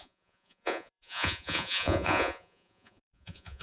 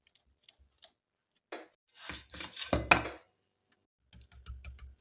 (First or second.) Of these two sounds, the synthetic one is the first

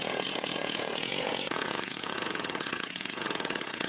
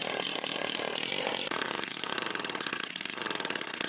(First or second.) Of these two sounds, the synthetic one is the first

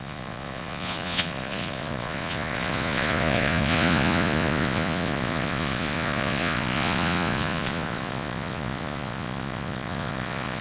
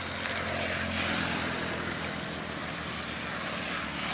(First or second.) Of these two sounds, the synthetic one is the first